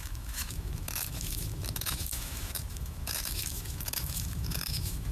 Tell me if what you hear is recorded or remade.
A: remade